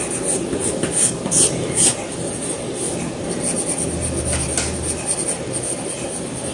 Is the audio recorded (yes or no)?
yes